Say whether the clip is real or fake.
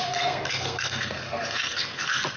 fake